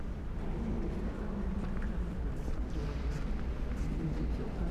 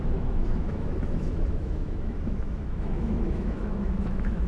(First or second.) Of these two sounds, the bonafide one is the first